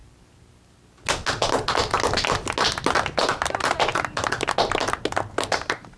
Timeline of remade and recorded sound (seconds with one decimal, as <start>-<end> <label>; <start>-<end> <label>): 0.0-6.0 recorded